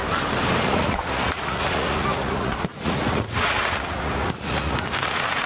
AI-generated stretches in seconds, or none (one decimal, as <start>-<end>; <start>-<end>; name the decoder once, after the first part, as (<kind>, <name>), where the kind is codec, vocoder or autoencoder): 0.6-5.5 (vocoder, Vocos)